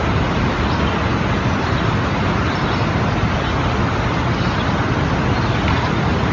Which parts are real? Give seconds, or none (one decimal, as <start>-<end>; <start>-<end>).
0.0-6.3